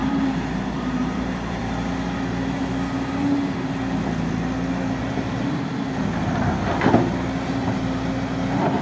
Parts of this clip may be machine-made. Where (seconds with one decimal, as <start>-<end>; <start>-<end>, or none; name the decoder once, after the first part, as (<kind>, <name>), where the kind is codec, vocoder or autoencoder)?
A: 0.0-1.6 (vocoder, BigVGAN v2); 5.0-5.8

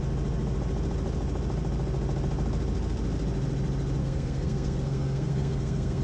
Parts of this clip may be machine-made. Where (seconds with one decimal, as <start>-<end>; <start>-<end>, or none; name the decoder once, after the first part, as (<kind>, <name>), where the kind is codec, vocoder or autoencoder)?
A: 4.0-6.0 (codec, SNAC)

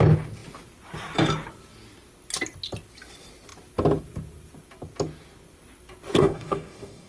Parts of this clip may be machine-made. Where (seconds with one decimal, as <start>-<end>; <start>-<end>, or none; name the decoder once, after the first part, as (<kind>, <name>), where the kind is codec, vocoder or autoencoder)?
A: 6.2-7.1 (codec, DAC)

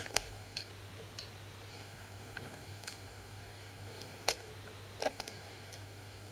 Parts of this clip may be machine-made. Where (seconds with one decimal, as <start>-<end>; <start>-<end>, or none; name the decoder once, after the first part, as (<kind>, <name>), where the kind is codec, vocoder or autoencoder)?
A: 0.0-0.7 (codec, DAC); 1.7-4.5; 5.1-6.3

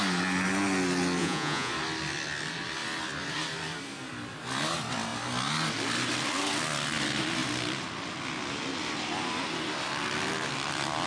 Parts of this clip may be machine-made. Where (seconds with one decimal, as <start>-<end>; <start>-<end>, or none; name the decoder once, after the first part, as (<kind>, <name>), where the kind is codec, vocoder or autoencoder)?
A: 1.2-1.7 (vocoder, Vocos)

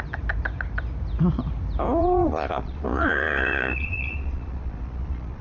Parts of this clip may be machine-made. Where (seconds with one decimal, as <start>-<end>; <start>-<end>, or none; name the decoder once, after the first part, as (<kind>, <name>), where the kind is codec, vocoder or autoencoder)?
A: 2.0-5.4 (vocoder, Vocos)

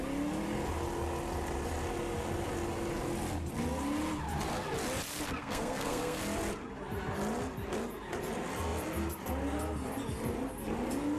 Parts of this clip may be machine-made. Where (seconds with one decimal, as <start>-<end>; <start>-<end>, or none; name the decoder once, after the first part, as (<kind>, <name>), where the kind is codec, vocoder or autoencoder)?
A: 5.4-6.2 (codec, SNAC)

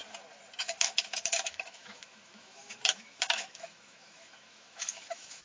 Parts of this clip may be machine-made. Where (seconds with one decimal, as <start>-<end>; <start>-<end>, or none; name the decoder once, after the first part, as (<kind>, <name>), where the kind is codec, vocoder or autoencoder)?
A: 0.6-5.4 (autoencoder, DAC-VAE)